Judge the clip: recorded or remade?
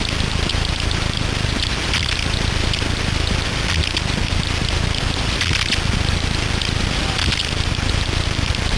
recorded